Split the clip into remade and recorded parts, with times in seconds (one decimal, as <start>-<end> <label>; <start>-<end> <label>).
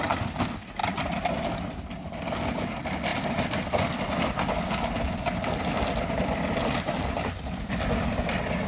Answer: 0.0-8.7 recorded